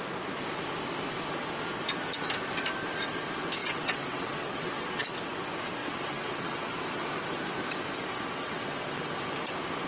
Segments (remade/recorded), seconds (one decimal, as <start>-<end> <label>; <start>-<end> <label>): 0.0-3.6 recorded; 3.6-5.0 remade; 5.0-5.8 recorded; 5.8-6.8 remade; 6.8-8.1 recorded; 8.1-9.1 remade; 9.1-9.9 recorded